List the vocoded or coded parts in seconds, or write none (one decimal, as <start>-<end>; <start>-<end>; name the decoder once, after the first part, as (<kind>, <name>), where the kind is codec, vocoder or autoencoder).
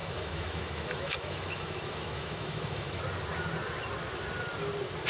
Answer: 0.0-3.0 (autoencoder, DAC-VAE)